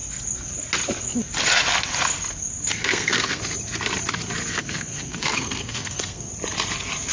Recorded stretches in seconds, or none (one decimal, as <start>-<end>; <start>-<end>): 0.0-2.8; 3.4-4.5; 6.3-7.1